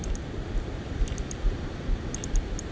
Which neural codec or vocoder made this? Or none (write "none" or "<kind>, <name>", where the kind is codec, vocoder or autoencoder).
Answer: none